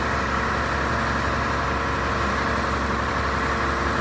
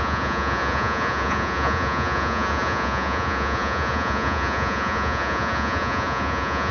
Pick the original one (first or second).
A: first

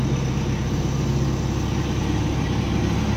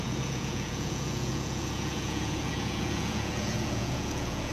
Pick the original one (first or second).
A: first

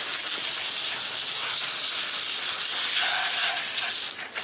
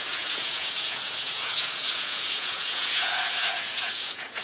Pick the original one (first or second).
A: first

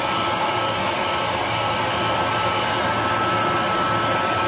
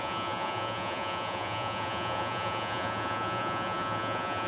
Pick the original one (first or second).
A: first